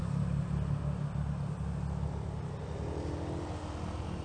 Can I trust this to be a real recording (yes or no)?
yes